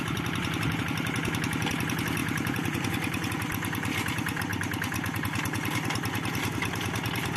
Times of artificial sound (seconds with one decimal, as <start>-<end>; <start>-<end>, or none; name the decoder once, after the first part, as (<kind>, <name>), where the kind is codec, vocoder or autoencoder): 2.2-3.3 (vocoder, BigVGAN v2)